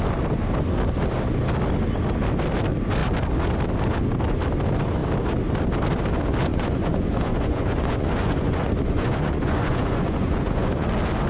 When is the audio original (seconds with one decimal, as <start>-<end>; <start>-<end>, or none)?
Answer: 0.0-6.5; 10.9-11.3